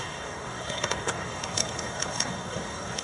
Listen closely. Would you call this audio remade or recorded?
remade